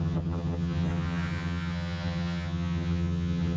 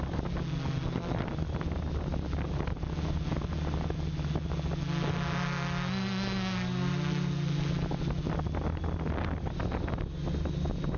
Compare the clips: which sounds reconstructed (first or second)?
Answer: first